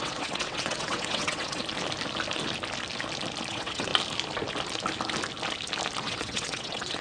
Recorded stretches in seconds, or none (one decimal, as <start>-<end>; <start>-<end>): 1.6-3.5; 3.9-6.0